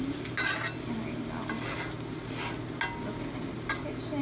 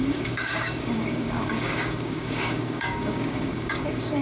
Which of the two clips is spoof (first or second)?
second